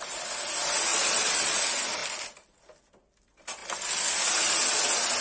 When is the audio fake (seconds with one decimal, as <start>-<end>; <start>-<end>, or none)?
0.9-1.6